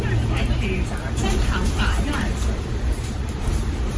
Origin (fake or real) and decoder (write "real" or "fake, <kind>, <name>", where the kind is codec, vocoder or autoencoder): fake, vocoder, BigVGAN v2